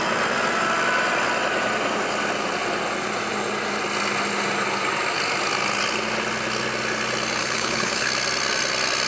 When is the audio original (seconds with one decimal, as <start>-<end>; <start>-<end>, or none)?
0.0-7.4; 8.1-9.1

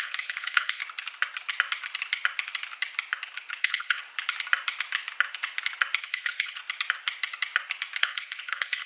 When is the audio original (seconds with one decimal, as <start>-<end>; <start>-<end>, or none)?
0.8-3.6; 4.0-6.0; 6.6-8.0